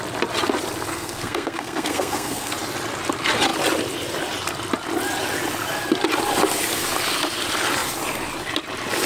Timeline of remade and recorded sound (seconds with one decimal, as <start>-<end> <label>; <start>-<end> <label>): 0.0-0.9 recorded; 0.9-2.5 remade; 2.5-9.1 recorded